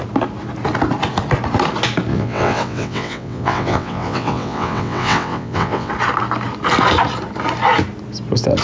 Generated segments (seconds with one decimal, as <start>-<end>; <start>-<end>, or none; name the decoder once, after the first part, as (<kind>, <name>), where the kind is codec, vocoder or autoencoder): 2.1-5.9 (vocoder, WaveNeXt)